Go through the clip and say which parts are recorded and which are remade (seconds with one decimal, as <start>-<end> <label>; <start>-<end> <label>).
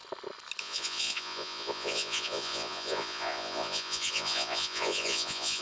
0.0-0.6 recorded; 0.6-5.6 remade